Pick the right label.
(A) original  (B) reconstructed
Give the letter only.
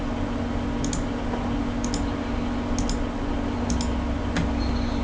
A